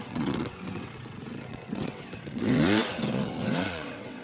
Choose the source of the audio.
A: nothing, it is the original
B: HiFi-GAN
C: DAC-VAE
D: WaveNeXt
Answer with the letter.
D